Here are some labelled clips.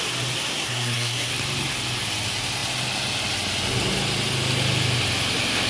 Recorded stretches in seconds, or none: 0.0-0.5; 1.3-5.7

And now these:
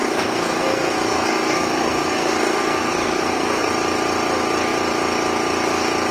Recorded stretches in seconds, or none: 3.7-6.1

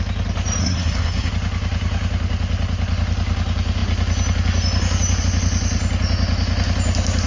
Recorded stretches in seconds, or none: 0.0-0.6; 1.3-7.3

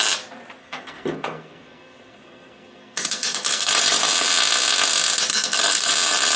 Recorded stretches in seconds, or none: 0.0-0.6; 3.7-5.3; 5.9-6.4

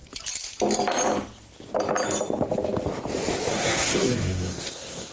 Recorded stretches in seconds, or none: 0.0-3.5